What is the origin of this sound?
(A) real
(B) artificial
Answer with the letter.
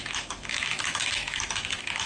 B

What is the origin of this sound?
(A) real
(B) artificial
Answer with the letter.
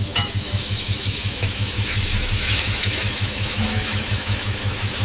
B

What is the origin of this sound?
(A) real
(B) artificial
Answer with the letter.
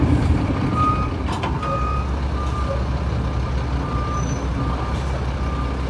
A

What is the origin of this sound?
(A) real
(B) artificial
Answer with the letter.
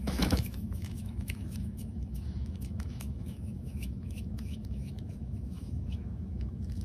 B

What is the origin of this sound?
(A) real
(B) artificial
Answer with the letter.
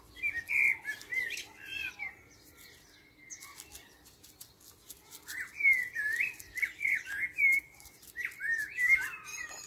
A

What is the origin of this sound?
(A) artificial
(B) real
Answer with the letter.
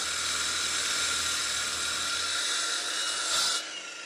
B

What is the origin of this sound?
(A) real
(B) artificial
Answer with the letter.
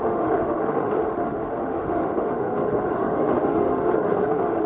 B